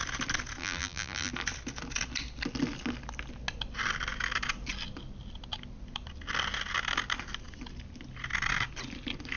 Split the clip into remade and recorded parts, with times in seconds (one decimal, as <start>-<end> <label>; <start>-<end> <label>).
0.0-0.6 recorded; 0.6-1.3 remade; 1.3-9.4 recorded